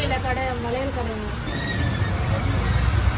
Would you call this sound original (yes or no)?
yes